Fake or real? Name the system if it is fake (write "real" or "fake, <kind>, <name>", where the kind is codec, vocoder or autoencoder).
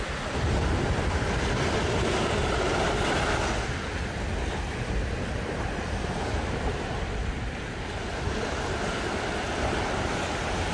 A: real